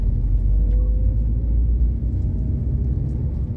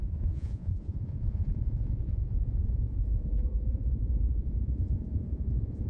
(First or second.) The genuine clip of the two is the first